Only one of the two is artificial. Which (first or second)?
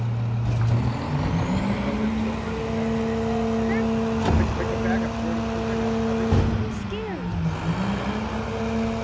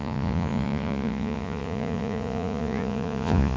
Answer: second